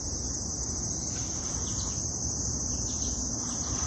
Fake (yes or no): no